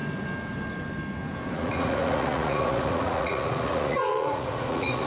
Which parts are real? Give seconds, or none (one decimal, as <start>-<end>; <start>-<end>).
0.0-1.5